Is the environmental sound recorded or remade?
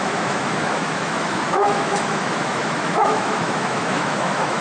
remade